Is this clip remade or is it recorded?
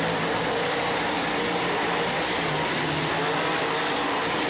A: recorded